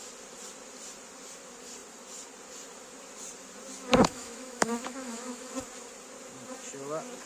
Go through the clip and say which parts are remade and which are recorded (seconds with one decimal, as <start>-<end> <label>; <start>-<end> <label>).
0.0-3.9 recorded; 3.9-5.5 remade; 5.5-7.3 recorded